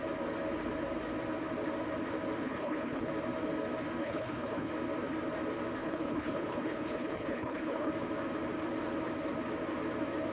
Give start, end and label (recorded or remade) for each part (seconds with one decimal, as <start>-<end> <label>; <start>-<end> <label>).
0.0-2.4 recorded; 2.4-3.1 remade; 3.1-4.0 recorded; 4.0-4.7 remade; 4.7-5.8 recorded; 5.8-7.9 remade; 7.9-10.3 recorded